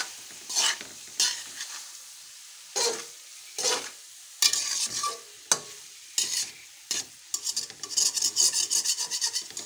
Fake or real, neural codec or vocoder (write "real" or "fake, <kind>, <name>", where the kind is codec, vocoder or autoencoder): real